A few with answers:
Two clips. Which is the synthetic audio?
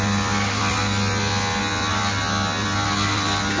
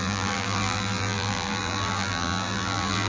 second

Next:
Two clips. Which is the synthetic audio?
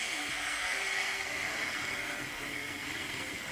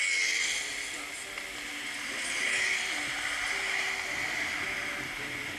first